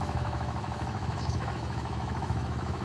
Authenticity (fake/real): fake